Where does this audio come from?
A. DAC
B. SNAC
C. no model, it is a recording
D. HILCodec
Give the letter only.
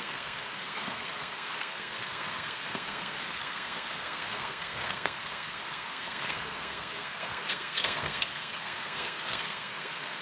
B